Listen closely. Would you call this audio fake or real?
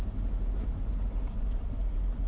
real